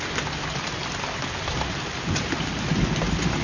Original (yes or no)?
yes